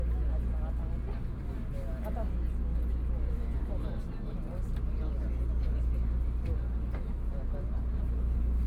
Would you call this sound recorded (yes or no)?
yes